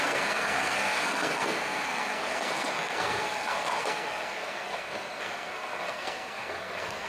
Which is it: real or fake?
fake